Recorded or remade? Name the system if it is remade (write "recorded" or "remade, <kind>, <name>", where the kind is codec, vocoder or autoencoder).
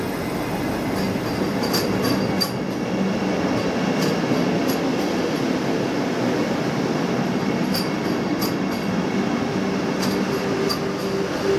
recorded